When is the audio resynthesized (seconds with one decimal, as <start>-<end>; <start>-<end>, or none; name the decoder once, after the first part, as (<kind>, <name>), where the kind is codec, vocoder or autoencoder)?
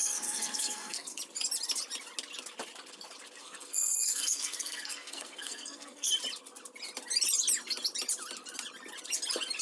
0.0-1.2 (codec, SNAC); 3.4-6.1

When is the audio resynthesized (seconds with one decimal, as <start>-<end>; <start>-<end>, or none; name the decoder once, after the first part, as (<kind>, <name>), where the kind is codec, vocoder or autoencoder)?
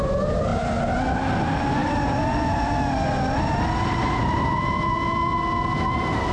none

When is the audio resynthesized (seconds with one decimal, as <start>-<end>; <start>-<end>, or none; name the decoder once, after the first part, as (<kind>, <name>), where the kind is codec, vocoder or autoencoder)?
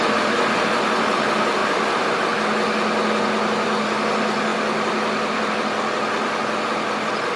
none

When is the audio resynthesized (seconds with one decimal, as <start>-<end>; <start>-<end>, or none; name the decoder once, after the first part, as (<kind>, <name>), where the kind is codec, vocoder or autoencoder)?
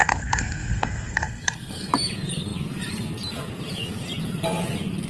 0.0-1.9 (codec, SNAC)